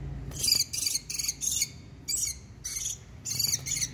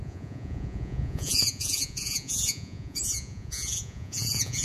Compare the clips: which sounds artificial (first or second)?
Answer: second